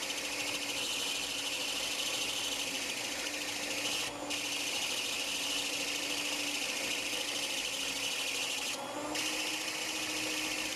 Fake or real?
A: real